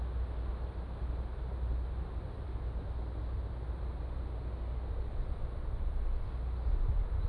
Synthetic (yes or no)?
no